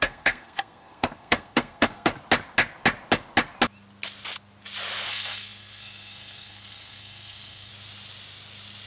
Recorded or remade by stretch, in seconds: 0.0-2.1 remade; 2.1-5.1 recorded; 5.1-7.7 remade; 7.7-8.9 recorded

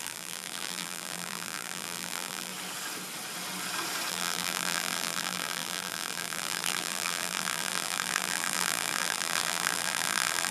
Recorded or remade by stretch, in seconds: 0.0-2.5 remade; 2.5-4.1 recorded; 4.1-10.5 remade